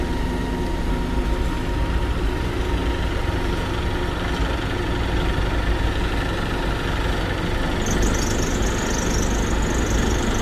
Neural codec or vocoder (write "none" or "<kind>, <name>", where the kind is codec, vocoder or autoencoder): none